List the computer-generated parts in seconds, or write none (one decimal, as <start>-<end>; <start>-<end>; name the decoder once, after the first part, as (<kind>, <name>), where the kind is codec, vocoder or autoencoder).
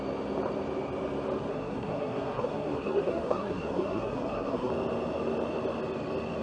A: 1.5-4.7 (codec, SNAC)